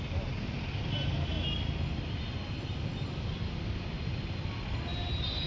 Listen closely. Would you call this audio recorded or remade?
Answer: recorded